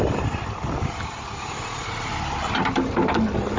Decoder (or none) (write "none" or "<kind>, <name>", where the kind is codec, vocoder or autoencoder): none